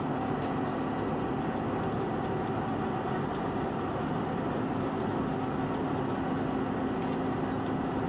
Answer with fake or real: real